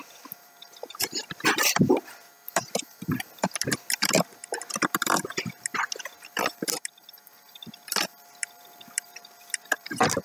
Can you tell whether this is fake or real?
fake